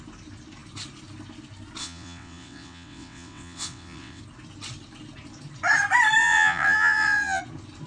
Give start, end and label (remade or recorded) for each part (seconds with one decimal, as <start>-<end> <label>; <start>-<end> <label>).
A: 0.0-1.8 recorded; 1.8-4.2 remade; 4.2-6.2 recorded; 6.2-7.4 remade; 7.4-7.9 recorded